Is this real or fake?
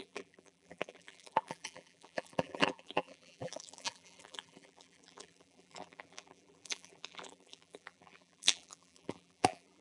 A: fake